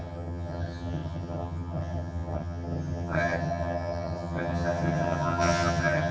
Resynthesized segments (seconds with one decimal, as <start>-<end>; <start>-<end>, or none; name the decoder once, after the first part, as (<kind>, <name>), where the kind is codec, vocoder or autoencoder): 0.0-6.1 (vocoder, HiFi-GAN)